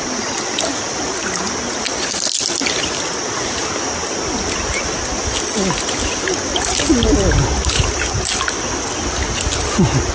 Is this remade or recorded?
recorded